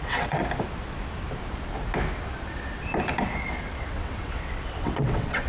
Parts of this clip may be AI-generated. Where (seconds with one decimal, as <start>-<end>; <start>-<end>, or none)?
0.0-0.4; 3.7-5.5